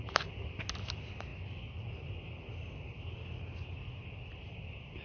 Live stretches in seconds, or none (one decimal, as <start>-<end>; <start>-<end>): 0.0-5.0